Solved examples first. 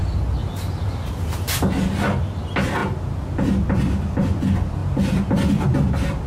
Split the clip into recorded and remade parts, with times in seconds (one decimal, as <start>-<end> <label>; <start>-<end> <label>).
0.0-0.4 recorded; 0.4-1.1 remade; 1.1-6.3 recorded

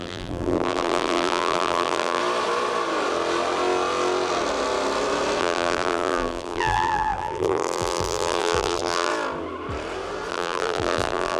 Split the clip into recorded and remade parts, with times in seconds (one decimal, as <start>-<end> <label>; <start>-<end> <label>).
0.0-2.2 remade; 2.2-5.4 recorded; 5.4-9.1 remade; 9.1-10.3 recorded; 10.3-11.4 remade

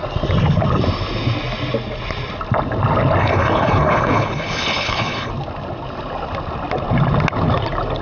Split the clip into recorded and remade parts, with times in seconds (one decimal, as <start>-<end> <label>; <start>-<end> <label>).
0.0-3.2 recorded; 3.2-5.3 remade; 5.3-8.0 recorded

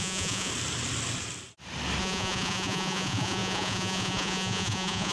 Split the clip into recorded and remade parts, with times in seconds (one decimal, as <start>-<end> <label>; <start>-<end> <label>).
0.0-0.5 remade; 0.5-2.0 recorded; 2.0-5.1 remade

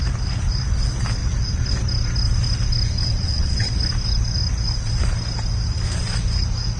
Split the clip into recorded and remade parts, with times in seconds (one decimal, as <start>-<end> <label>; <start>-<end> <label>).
0.0-3.0 recorded; 3.0-3.7 remade; 3.7-6.8 recorded